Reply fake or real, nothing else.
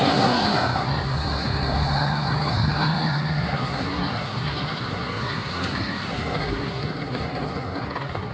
fake